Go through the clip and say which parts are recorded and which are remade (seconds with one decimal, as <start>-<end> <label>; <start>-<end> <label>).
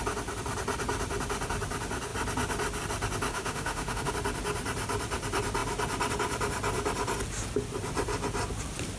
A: 0.0-3.3 recorded; 3.3-4.1 remade; 4.1-9.0 recorded